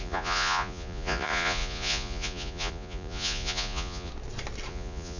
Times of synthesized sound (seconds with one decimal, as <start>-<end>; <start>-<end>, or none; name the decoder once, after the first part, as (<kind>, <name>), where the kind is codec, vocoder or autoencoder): 0.0-4.1 (vocoder, Vocos); 4.7-5.2